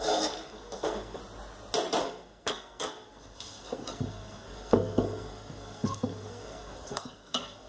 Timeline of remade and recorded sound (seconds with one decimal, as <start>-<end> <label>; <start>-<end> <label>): 0.0-1.2 remade; 1.2-2.0 recorded; 2.0-7.7 remade